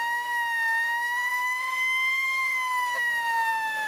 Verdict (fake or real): fake